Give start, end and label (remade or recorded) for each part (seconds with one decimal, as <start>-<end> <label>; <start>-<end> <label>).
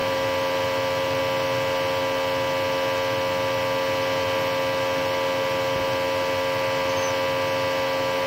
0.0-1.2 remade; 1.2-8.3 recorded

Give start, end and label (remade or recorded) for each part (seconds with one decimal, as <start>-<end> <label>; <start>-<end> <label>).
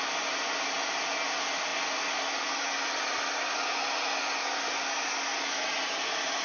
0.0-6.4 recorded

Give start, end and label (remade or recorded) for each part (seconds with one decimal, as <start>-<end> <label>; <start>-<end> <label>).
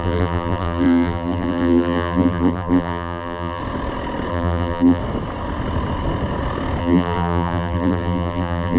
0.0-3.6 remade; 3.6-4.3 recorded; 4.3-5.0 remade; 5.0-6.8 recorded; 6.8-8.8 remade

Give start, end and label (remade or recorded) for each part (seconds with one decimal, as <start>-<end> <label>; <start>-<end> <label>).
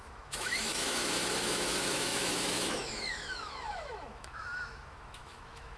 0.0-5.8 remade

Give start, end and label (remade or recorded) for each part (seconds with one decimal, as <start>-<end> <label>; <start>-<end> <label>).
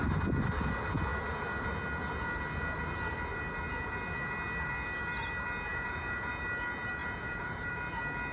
0.0-5.7 recorded; 5.7-6.3 remade; 6.3-7.0 recorded; 7.0-7.7 remade; 7.7-8.3 recorded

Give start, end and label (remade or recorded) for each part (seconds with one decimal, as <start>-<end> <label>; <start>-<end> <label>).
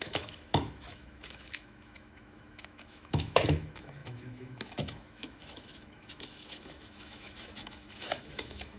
0.0-8.8 remade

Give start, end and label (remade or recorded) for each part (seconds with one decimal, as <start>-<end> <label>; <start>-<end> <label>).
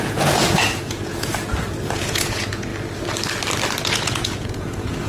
0.0-1.3 remade; 1.3-1.8 recorded; 1.8-2.7 remade; 2.7-3.8 recorded; 3.8-5.1 remade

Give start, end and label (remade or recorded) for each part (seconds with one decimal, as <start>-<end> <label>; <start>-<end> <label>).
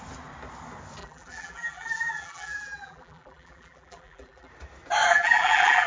0.0-1.0 recorded; 1.0-4.5 remade; 4.5-5.1 recorded; 5.1-5.9 remade